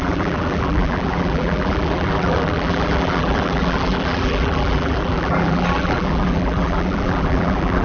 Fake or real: fake